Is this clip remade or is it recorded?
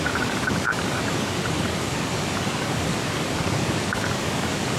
remade